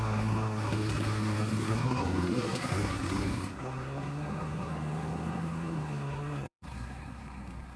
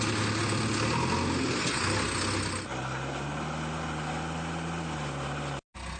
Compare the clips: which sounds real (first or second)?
second